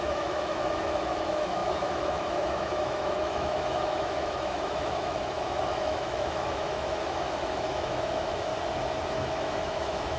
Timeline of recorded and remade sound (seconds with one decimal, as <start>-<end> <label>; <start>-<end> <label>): 0.0-8.5 remade; 8.5-9.1 recorded; 9.1-10.2 remade